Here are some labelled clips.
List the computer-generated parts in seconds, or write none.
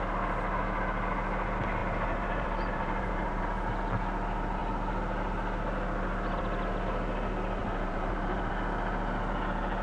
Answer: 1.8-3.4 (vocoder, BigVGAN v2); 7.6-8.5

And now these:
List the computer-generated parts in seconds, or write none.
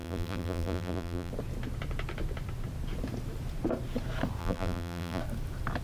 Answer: 0.0-1.3 (vocoder, BigVGAN v2); 4.4-5.2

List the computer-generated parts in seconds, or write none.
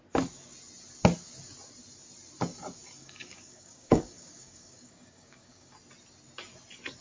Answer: 3.0-5.7 (codec, DAC)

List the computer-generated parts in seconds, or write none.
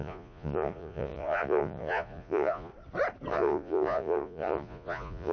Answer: 0.0-2.7 (vocoder, Vocos); 3.3-5.3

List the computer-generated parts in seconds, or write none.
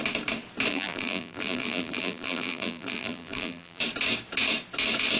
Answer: 0.7-3.8 (vocoder, BigVGAN v2)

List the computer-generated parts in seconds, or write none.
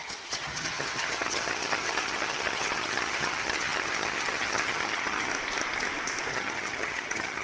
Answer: 0.0-5.3 (vocoder, HiFi-GAN); 6.3-7.4